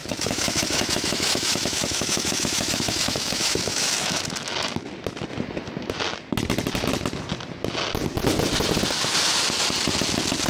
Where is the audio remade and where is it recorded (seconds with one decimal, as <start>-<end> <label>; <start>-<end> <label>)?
0.0-4.2 remade; 4.2-10.5 recorded

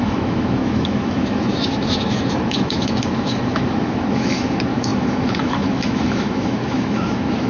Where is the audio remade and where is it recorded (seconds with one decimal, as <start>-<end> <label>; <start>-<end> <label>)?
0.0-7.5 remade

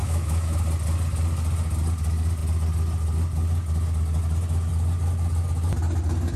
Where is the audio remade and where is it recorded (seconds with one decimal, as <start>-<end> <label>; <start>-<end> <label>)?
0.0-0.6 remade; 0.6-6.4 recorded

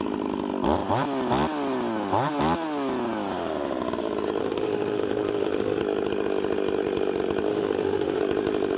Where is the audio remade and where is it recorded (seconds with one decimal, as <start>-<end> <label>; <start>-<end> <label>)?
0.0-4.4 recorded; 4.4-5.8 remade; 5.8-7.5 recorded; 7.5-8.2 remade; 8.2-8.8 recorded

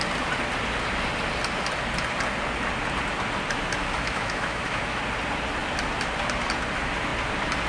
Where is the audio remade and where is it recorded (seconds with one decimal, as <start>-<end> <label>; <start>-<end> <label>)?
0.0-3.8 recorded; 3.8-5.0 remade; 5.0-7.7 recorded

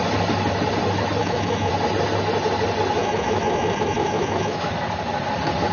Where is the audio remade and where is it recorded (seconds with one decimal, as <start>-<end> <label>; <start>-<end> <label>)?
0.0-1.2 recorded; 1.2-1.7 remade; 1.7-3.0 recorded; 3.0-4.7 remade; 4.7-5.7 recorded

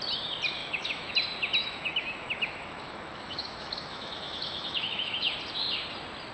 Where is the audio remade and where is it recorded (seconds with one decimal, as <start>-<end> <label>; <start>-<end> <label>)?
0.0-0.6 recorded; 0.6-1.1 remade; 1.1-1.6 recorded; 1.6-5.4 remade; 5.4-6.3 recorded